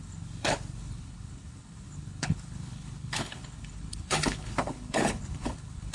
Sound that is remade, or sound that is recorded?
remade